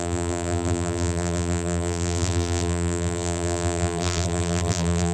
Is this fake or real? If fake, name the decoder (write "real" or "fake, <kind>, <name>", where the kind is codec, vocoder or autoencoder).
fake, vocoder, BigVGAN v2